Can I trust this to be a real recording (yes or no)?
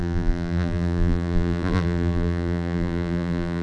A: no